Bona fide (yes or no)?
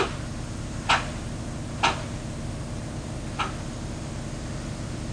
yes